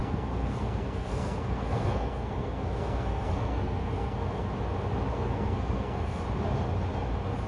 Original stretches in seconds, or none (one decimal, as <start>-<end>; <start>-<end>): 4.5-5.1; 6.2-7.5